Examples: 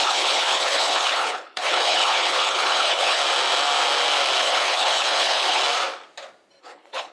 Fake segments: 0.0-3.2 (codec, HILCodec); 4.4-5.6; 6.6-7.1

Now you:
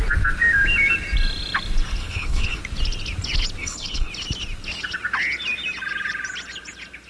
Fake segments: 2.0-2.6 (codec, HILCodec); 3.6-4.1

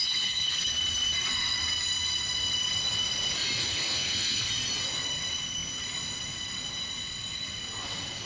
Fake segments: 0.0-0.7 (codec, HILCodec); 3.6-4.5